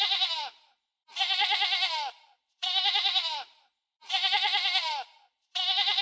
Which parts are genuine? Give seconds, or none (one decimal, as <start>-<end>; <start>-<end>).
none